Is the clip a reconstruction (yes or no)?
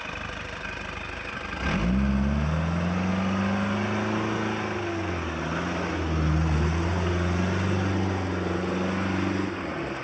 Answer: no